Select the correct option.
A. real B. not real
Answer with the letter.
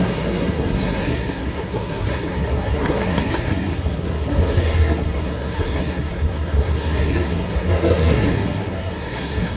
B